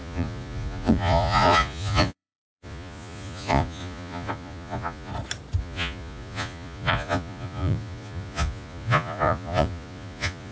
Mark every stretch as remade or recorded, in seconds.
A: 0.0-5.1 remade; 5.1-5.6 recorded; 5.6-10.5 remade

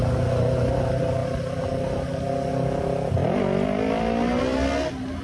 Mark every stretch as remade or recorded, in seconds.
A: 0.0-5.2 recorded

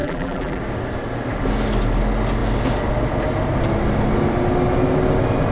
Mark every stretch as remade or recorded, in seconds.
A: 0.0-0.6 remade; 0.6-5.5 recorded